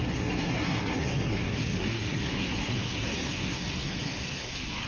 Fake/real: fake